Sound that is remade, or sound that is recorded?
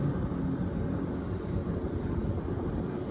recorded